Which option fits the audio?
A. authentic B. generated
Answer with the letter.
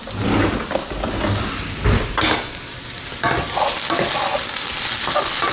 A